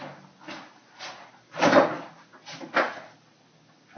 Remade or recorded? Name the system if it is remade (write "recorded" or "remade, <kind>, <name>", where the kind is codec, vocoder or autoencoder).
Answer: recorded